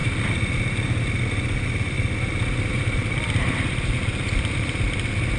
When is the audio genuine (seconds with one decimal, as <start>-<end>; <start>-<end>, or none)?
0.0-2.7